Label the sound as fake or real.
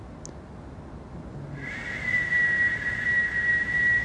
real